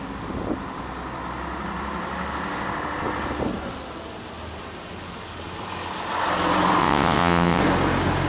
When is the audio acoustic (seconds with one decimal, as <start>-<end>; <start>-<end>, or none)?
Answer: 0.0-6.8; 7.6-8.3

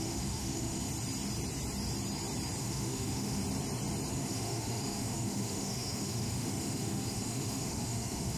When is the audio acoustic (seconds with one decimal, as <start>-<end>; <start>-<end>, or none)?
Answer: 0.9-2.6; 3.4-4.1

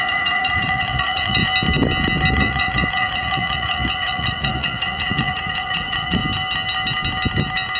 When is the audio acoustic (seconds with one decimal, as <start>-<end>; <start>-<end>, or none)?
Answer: 1.4-2.3; 6.2-7.8

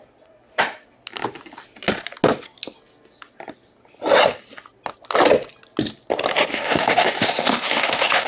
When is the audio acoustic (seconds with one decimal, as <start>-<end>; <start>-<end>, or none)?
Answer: 0.0-6.5

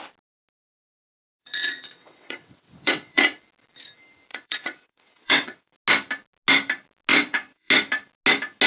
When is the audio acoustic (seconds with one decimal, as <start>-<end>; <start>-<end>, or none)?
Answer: 0.0-1.4; 3.4-4.3; 5.7-7.1; 7.7-8.7

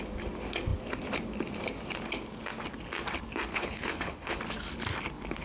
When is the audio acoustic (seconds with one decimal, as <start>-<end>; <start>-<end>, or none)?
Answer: 0.0-3.5; 4.4-5.4